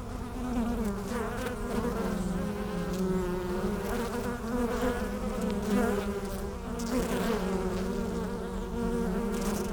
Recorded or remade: recorded